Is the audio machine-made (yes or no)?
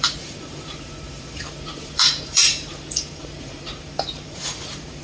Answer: yes